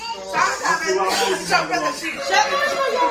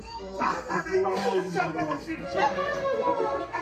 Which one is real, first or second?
first